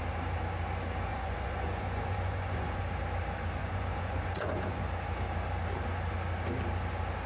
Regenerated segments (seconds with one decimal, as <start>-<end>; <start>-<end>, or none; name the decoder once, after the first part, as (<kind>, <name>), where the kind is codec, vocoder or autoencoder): 1.1-2.8 (vocoder, Vocos); 3.6-4.8